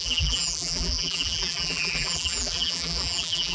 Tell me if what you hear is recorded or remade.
remade